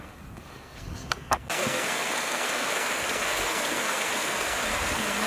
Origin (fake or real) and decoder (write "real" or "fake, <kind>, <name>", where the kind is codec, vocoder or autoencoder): fake, codec, SNAC